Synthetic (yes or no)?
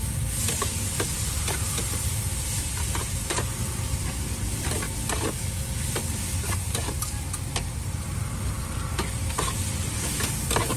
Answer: no